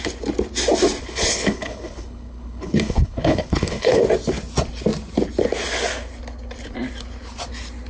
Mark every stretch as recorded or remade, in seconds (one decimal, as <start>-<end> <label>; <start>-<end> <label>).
0.0-1.0 recorded; 1.0-4.0 remade; 4.0-7.9 recorded